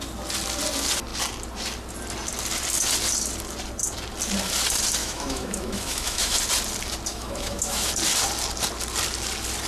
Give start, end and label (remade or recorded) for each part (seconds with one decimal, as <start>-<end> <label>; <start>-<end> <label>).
0.0-5.0 recorded; 5.0-6.4 remade; 6.4-7.1 recorded; 7.1-7.9 remade; 7.9-9.7 recorded